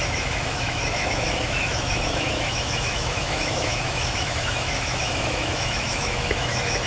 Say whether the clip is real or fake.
fake